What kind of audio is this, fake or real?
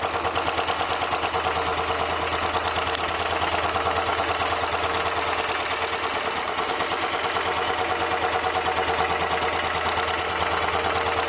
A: real